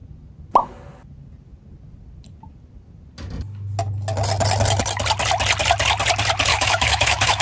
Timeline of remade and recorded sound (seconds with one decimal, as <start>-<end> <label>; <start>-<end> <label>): 0.0-6.5 recorded; 6.5-7.4 remade